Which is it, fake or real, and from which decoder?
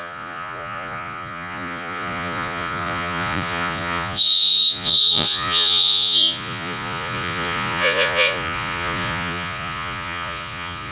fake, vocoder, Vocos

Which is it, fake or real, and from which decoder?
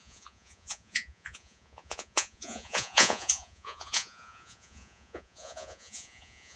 fake, vocoder, Vocos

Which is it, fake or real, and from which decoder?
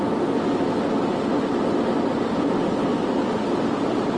real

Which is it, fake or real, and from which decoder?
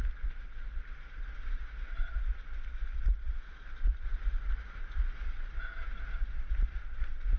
real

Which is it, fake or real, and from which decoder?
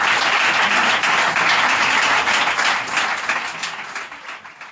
real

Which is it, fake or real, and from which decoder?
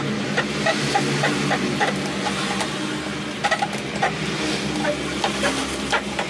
real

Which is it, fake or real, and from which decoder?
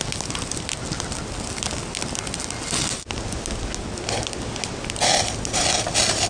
real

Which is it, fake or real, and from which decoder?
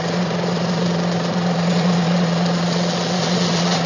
fake, vocoder, Vocos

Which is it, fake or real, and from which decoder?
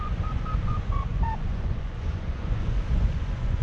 fake, vocoder, Vocos